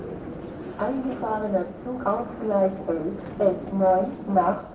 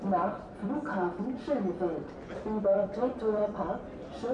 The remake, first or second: second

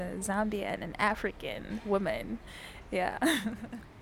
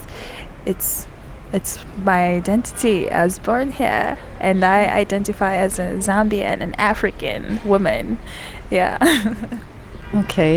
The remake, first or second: first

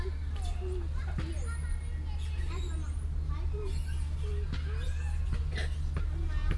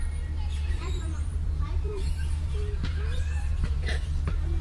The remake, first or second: second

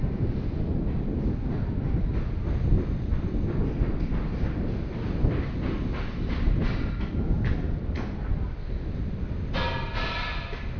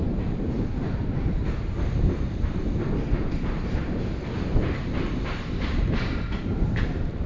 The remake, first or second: second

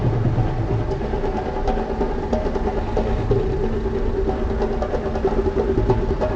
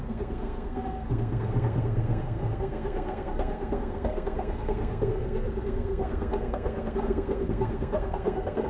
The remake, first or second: second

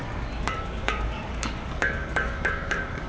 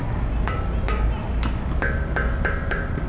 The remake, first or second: first